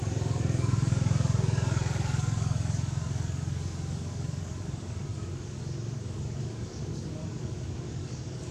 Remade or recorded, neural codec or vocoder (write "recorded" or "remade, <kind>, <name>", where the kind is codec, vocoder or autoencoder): remade, codec, DAC